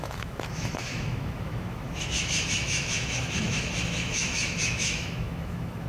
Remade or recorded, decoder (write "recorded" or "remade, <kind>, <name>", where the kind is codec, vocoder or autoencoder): remade, autoencoder, DAC-VAE